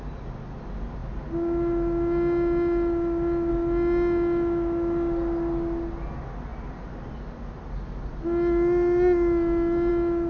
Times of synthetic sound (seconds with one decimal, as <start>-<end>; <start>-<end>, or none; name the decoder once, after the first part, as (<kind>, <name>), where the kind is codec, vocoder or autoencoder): none